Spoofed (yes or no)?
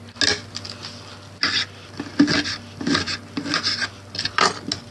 no